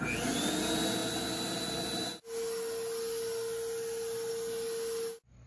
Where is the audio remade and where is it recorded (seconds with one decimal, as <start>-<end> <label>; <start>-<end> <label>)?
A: 0.0-5.5 recorded